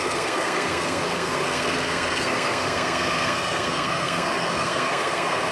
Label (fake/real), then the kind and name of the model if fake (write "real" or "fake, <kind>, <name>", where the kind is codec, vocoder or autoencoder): fake, codec, SNAC